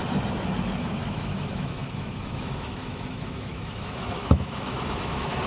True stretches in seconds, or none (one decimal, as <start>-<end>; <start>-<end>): 0.0-0.8